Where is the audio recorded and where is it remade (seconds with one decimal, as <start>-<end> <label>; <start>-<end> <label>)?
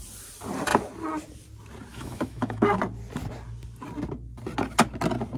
0.0-1.9 recorded; 1.9-2.8 remade; 2.8-5.4 recorded